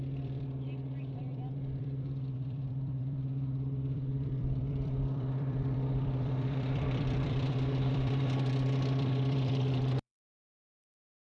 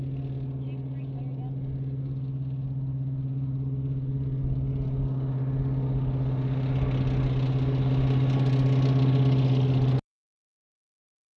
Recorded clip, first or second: second